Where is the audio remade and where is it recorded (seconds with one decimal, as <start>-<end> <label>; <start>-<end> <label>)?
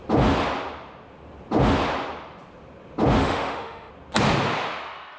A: 0.0-3.2 recorded; 3.2-3.9 remade; 3.9-5.2 recorded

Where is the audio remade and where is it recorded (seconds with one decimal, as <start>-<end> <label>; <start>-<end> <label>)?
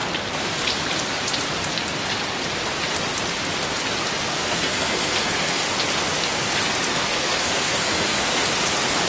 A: 0.0-4.3 recorded; 4.3-5.6 remade; 5.6-6.9 recorded; 6.9-8.4 remade; 8.4-9.1 recorded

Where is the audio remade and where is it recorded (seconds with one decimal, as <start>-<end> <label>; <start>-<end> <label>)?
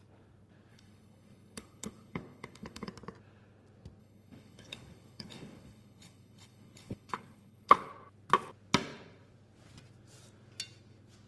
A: 0.0-0.7 recorded; 0.7-2.9 remade; 2.9-4.0 recorded; 4.0-7.9 remade; 7.9-11.3 recorded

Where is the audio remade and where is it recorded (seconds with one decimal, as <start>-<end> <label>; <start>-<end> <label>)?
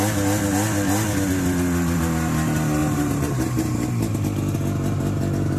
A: 0.0-2.8 recorded; 2.8-4.1 remade; 4.1-5.6 recorded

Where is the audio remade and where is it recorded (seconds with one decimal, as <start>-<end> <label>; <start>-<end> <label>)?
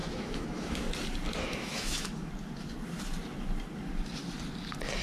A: 0.0-0.9 remade; 0.9-1.6 recorded; 1.6-2.3 remade; 2.3-5.0 recorded